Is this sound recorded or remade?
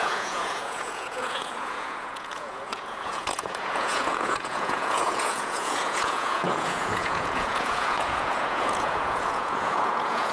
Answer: remade